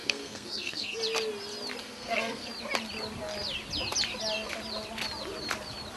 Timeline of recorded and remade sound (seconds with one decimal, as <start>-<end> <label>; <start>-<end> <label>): 0.0-1.0 remade; 1.0-1.8 recorded; 1.8-2.5 remade; 2.5-6.0 recorded